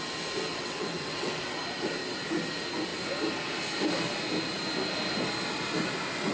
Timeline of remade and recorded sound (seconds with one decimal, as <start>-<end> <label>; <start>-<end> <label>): 0.0-0.5 recorded; 0.5-1.6 remade; 1.6-6.3 recorded